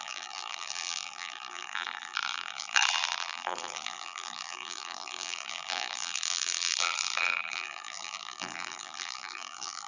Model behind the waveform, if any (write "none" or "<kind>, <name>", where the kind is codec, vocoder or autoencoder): vocoder, BigVGAN v2